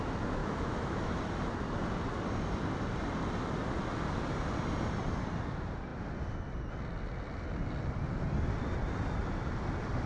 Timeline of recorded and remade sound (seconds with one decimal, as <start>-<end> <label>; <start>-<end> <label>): 0.0-0.4 recorded; 0.4-1.2 remade; 1.2-10.1 recorded